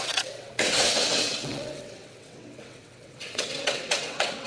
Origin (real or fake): fake